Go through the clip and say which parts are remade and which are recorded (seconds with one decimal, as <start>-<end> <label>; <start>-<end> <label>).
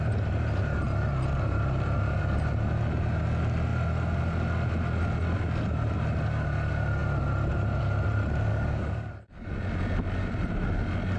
0.0-8.5 recorded; 8.5-9.5 remade; 9.5-11.2 recorded